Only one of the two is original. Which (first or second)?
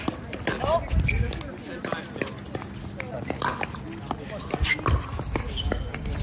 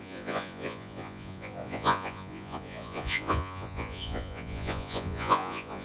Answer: first